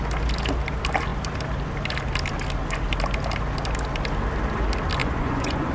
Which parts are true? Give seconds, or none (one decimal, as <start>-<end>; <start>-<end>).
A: 0.0-5.0